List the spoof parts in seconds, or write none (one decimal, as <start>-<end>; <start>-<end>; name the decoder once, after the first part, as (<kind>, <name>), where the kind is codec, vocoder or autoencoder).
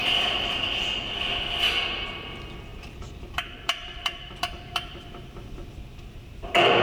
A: 0.0-0.8 (vocoder, BigVGAN v2); 2.7-5.0